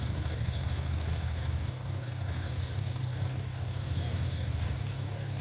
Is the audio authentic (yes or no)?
no